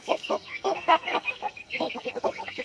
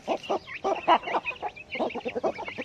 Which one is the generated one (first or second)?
first